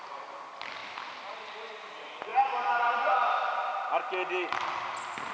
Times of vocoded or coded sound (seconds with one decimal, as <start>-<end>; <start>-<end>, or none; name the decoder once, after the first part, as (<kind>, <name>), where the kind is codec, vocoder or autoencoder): none